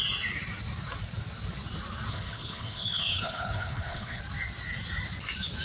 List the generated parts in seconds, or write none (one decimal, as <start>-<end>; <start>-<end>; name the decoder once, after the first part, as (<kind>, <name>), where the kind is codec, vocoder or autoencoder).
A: 2.1-4.2 (codec, HILCodec)